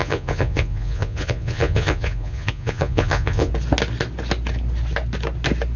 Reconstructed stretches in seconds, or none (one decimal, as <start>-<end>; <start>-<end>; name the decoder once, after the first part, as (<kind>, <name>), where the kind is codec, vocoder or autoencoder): 0.0-3.5 (vocoder, Vocos)